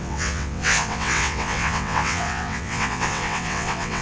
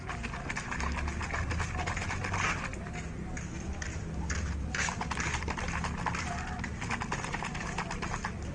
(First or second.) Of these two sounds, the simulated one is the first